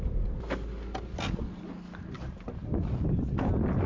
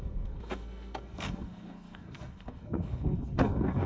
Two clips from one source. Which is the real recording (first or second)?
first